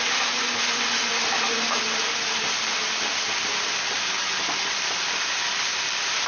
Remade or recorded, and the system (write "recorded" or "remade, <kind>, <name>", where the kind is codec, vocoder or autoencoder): recorded